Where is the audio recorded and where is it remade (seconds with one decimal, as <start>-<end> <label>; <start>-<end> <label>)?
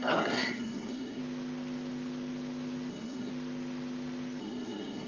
0.0-1.2 remade; 1.2-2.9 recorded; 2.9-3.3 remade; 3.3-4.4 recorded; 4.4-5.1 remade